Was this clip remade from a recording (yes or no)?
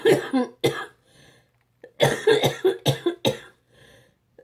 no